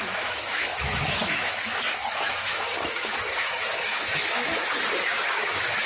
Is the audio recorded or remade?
remade